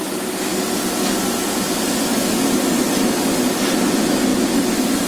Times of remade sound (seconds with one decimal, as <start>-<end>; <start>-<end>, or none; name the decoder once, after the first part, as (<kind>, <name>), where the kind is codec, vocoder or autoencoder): 0.5-1.2 (vocoder, BigVGAN v2); 4.3-5.1